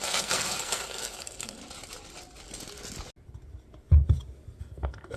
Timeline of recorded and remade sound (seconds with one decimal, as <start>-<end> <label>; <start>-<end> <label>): 0.0-1.6 remade; 1.6-4.6 recorded; 4.6-5.2 remade